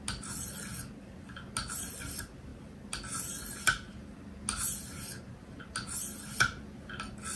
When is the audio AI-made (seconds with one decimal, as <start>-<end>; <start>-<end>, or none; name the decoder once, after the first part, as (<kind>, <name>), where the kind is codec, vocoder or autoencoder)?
none